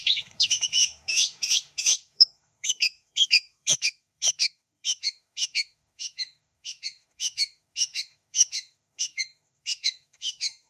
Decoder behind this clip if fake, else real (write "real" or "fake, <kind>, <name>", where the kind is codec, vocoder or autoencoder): fake, autoencoder, DAC-VAE